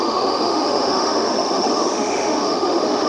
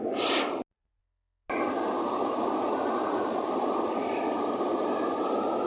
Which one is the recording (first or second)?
second